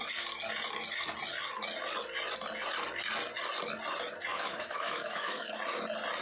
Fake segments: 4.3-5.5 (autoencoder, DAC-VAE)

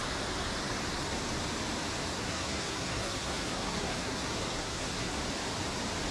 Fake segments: 2.1-5.2 (codec, SNAC)

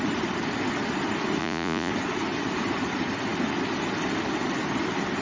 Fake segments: 1.4-1.9 (vocoder, Vocos)

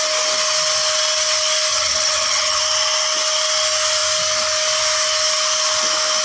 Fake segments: 1.7-2.6 (vocoder, HiFi-GAN)

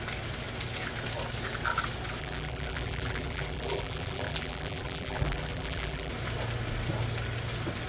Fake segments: 2.2-6.1 (vocoder, BigVGAN v2)

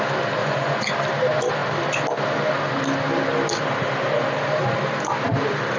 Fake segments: 0.4-0.9 (vocoder, Vocos)